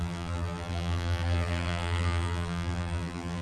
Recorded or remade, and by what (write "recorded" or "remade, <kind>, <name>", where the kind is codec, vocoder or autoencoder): remade, vocoder, BigVGAN v2